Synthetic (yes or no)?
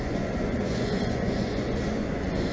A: yes